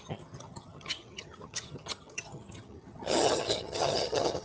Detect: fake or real fake